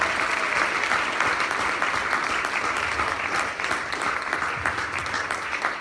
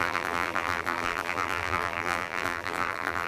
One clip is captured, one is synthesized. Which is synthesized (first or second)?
second